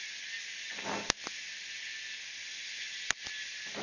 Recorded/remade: recorded